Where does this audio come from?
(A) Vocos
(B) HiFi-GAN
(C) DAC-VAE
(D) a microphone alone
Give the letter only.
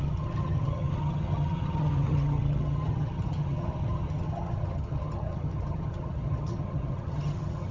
B